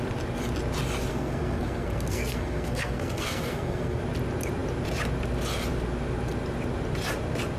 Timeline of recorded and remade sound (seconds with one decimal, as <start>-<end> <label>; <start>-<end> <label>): 0.0-1.1 recorded; 1.1-4.0 remade; 4.0-7.6 recorded